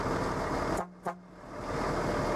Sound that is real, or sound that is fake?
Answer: real